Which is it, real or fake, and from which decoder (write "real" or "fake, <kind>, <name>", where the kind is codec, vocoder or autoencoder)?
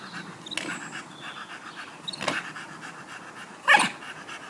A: real